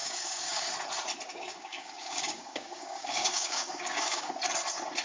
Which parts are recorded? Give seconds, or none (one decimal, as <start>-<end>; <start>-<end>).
0.7-1.3; 4.3-5.0